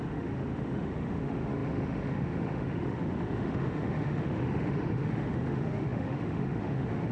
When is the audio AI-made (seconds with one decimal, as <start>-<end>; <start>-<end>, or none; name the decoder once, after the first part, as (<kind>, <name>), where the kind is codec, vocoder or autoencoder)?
0.0-7.1 (autoencoder, DAC-VAE)